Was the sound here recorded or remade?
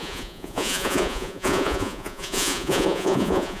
remade